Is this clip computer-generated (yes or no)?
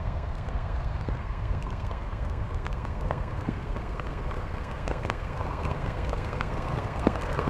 yes